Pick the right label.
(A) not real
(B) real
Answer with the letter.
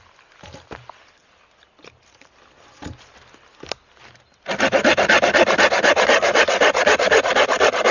B